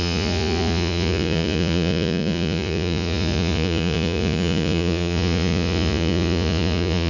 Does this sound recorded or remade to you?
remade